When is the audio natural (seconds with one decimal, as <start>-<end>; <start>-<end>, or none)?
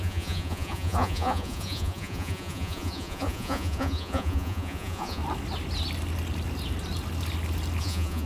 5.2-7.8